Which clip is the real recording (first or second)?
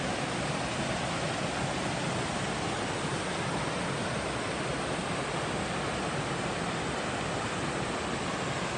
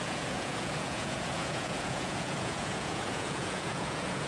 first